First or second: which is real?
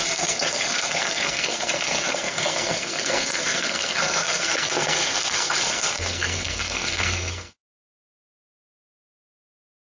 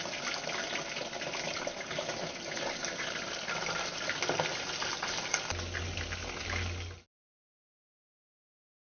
second